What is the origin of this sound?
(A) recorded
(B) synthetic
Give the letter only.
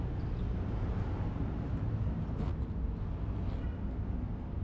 A